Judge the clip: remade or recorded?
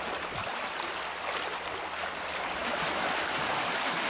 recorded